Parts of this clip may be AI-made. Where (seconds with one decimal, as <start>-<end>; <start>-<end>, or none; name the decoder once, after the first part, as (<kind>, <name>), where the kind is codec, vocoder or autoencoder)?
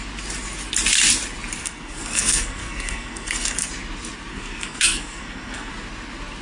1.6-3.7 (codec, SNAC); 4.3-5.7